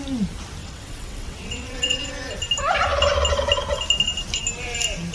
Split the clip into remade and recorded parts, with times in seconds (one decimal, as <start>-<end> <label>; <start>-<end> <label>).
0.0-0.6 recorded; 0.6-2.1 remade; 2.1-5.1 recorded